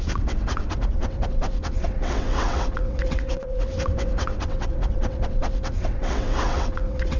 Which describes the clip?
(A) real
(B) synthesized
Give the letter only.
B